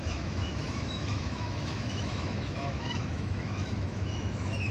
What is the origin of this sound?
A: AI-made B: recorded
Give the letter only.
A